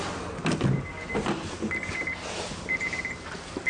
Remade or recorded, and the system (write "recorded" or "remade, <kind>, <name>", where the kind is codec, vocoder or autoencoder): recorded